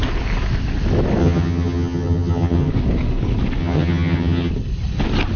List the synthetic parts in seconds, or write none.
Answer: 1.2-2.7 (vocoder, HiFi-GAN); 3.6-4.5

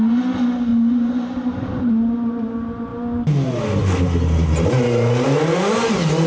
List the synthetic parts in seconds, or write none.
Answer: 0.7-1.8 (vocoder, BigVGAN v2)